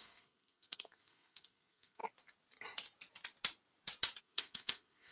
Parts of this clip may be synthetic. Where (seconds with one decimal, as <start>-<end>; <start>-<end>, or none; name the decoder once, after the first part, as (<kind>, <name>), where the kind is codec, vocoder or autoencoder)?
0.0-2.0 (codec, SNAC); 4.2-5.1